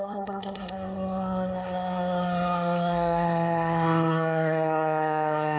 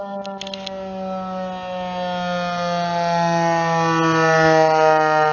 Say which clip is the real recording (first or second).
second